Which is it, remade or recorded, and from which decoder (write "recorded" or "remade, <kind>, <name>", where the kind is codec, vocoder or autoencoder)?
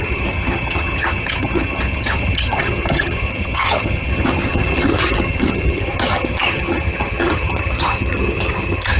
remade, vocoder, HiFi-GAN